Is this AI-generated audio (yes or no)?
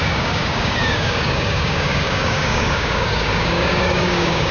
yes